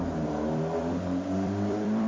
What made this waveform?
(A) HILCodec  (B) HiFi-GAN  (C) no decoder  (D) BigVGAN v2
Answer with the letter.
D